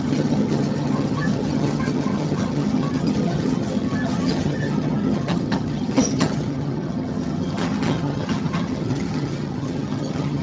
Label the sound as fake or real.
fake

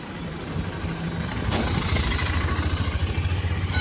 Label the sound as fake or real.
real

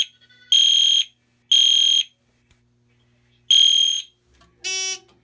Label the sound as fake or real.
real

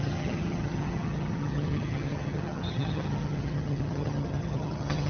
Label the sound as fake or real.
fake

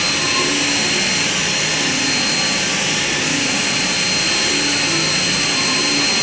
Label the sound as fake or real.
real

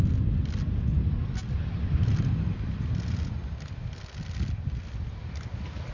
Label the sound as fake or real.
real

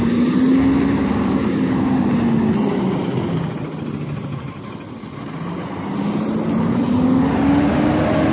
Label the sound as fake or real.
real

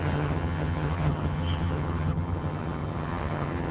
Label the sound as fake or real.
fake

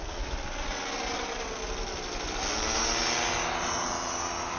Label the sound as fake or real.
real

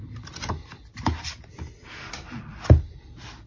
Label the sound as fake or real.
real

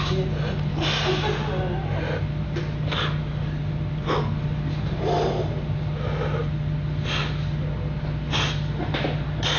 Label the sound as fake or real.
real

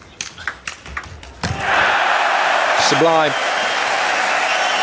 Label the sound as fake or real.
real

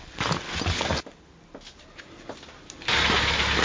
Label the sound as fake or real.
real